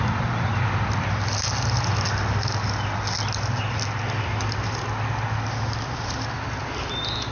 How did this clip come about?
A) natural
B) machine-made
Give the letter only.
A